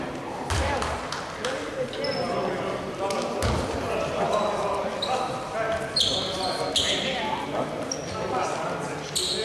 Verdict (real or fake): real